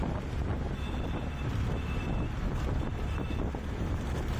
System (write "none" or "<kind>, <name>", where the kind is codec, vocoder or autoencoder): vocoder, BigVGAN v2